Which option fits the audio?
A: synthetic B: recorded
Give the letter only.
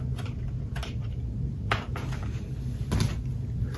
B